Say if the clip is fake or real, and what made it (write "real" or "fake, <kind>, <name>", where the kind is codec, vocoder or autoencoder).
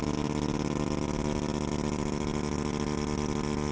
real